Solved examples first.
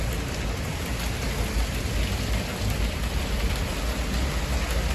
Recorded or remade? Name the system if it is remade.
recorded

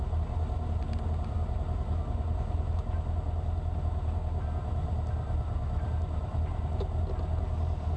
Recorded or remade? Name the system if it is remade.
recorded